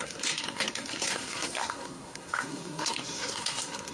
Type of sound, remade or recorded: remade